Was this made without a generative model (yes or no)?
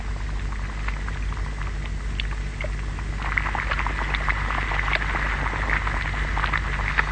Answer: yes